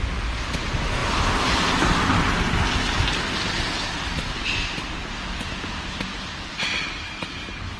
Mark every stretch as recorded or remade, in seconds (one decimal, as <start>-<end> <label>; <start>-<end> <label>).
0.0-7.8 recorded